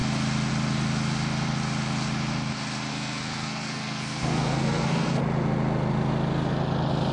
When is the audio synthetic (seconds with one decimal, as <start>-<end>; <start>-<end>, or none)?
2.9-5.2